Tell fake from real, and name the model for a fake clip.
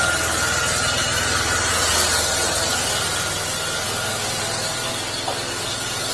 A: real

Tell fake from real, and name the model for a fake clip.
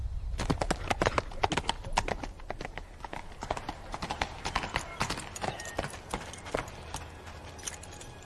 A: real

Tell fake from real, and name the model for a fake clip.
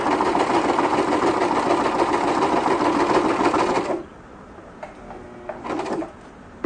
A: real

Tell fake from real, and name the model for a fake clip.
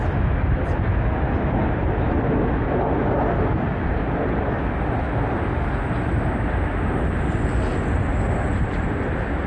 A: real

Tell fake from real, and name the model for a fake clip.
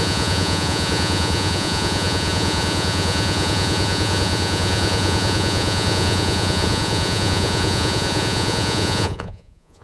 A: fake, vocoder, Vocos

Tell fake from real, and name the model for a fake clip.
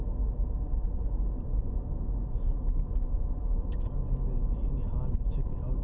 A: real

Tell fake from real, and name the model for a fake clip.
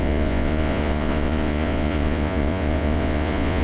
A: fake, vocoder, Vocos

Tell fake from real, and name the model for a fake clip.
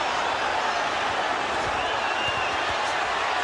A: real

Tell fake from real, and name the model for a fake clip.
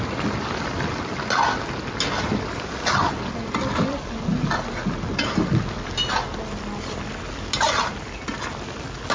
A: real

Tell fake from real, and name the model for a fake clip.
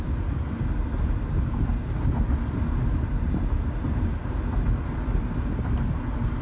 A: real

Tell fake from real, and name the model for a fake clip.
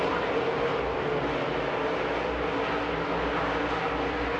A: real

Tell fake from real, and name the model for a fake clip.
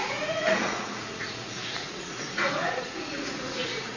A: fake, vocoder, Vocos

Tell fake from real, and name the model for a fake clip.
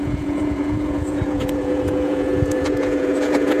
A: fake, vocoder, Vocos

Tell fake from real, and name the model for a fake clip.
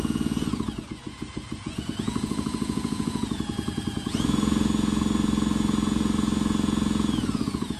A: fake, vocoder, Vocos